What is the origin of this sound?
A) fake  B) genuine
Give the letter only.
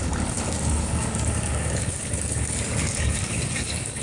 A